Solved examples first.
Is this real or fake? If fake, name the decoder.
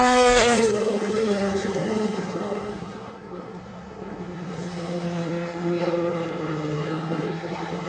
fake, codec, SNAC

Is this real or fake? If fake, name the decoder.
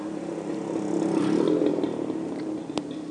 real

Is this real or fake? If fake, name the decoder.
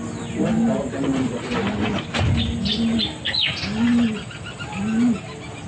real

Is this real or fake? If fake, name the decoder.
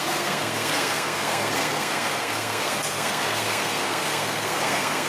fake, codec, SNAC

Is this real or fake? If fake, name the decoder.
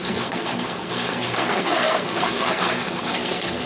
fake, codec, SNAC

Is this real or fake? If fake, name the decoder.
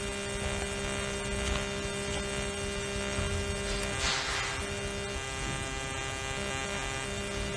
real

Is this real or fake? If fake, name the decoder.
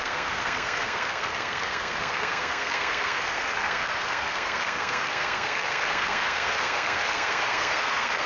fake, codec, SNAC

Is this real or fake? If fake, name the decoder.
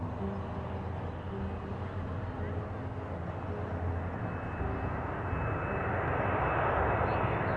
real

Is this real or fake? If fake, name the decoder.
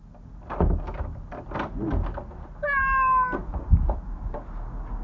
real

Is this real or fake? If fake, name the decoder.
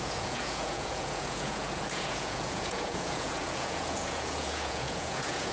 fake, vocoder, Vocos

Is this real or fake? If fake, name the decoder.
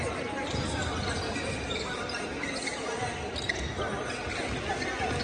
real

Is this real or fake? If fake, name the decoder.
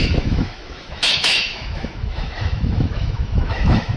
fake, autoencoder, DAC-VAE